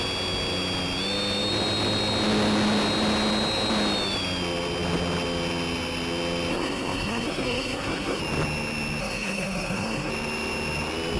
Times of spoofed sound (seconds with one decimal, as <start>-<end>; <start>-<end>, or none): 6.5-8.2; 9.0-10.1